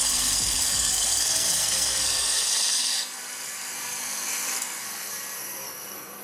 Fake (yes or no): yes